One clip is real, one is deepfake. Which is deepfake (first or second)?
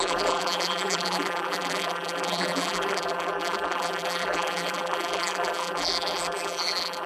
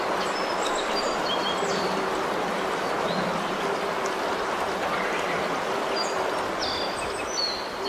first